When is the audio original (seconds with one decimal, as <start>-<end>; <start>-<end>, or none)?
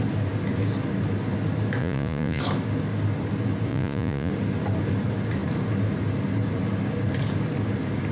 0.0-1.8; 2.4-3.7; 4.3-8.1